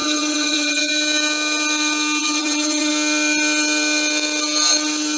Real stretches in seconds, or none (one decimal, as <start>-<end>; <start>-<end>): 0.9-2.2; 2.9-5.2